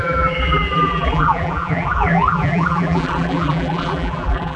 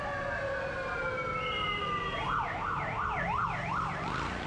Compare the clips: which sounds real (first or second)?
second